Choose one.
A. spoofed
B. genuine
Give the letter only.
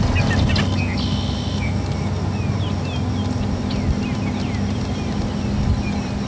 B